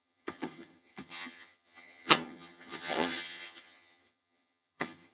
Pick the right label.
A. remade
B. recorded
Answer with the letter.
A